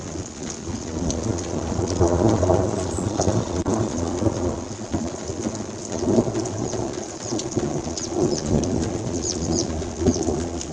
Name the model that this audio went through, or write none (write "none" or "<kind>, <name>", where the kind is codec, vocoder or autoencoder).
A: vocoder, Vocos